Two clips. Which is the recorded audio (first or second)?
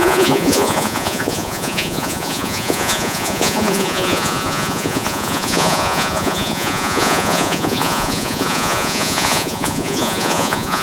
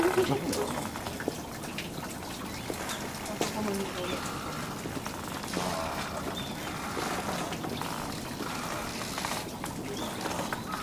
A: second